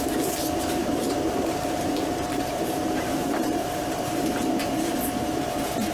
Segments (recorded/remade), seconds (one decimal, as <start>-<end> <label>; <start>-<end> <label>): 0.0-0.8 recorded; 0.8-4.2 remade; 4.2-5.9 recorded